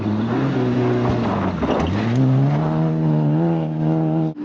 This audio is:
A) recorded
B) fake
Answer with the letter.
A